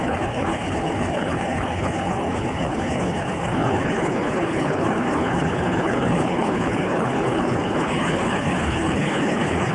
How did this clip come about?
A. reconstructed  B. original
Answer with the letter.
A